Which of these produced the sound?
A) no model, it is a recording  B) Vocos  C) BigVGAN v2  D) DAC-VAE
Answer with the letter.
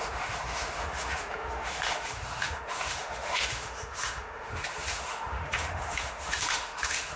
D